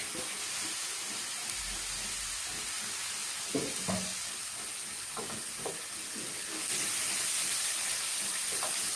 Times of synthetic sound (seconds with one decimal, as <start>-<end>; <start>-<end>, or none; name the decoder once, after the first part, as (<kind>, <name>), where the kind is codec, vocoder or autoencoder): none